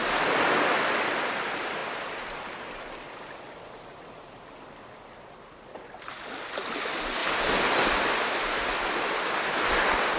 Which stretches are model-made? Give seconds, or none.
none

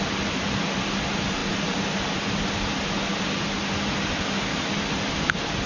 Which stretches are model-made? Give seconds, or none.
none

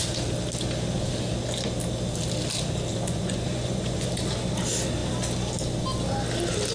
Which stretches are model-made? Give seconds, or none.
2.9-4.1 (vocoder, Vocos)

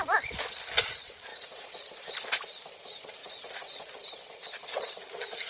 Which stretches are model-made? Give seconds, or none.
1.3-1.9 (vocoder, Vocos); 3.2-3.9